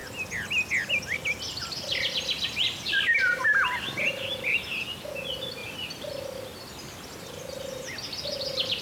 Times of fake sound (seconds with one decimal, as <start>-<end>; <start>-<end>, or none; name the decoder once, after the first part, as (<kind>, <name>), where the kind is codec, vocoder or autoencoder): 1.9-4.7 (vocoder, BigVGAN v2); 5.6-6.1